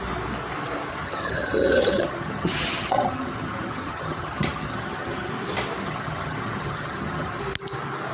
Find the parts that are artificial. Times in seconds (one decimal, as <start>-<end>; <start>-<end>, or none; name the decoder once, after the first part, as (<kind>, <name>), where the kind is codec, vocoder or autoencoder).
0.9-5.3 (vocoder, HiFi-GAN); 5.8-7.4